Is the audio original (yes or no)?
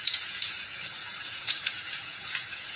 no